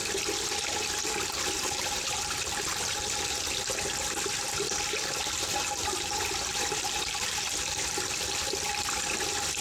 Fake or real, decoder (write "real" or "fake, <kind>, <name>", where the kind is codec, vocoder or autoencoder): real